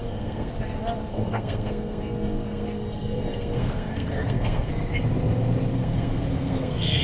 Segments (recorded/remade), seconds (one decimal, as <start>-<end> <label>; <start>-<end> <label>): 0.0-0.5 remade; 0.5-1.1 recorded; 1.1-4.7 remade; 4.7-5.7 recorded; 5.7-7.0 remade